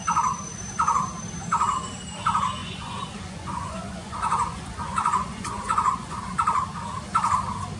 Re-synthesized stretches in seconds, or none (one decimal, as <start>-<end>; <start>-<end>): 2.6-6.2